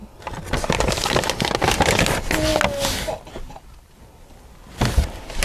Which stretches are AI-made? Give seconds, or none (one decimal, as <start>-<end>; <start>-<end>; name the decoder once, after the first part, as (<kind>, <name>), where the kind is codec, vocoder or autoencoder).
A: none